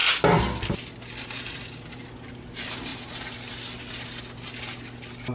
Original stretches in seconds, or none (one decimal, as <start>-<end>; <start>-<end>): 0.0-5.3